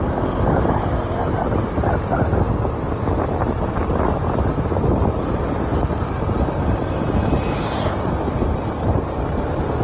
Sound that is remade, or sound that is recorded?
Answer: recorded